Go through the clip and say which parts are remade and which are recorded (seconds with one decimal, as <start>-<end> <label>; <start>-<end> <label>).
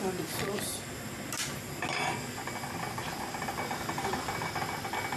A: 0.0-5.2 recorded